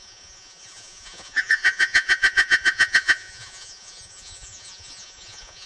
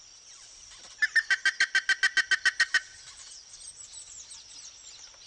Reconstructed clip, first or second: first